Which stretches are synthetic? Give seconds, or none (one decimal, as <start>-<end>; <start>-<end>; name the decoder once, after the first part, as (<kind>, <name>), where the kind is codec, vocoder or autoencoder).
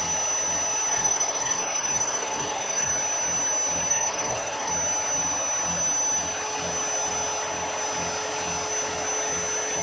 0.9-2.9 (codec, SNAC); 3.9-4.7